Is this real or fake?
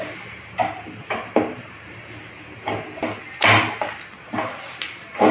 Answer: real